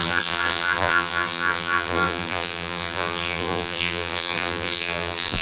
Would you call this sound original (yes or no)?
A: no